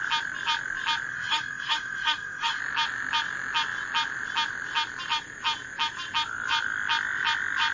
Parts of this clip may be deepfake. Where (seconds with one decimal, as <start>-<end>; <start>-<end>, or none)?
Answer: 1.1-2.6